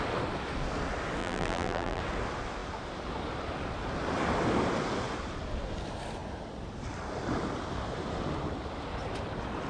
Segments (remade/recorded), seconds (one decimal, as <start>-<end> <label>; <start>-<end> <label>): 0.0-1.2 recorded; 1.2-2.0 remade; 2.0-9.7 recorded